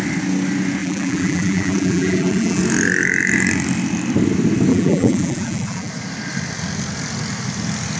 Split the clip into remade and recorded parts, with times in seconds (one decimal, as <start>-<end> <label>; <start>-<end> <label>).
0.0-0.8 recorded; 0.8-2.6 remade; 2.6-4.7 recorded; 4.7-5.9 remade; 5.9-8.0 recorded